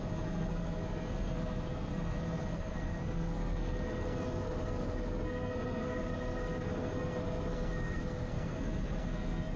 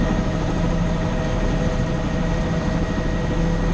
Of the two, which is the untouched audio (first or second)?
second